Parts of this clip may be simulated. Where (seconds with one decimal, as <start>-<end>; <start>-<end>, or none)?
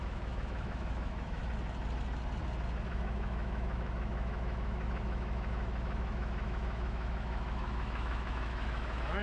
0.0-1.4; 2.9-9.2